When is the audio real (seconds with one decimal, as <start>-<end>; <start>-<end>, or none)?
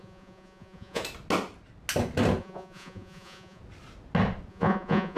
1.0-2.4; 3.6-4.5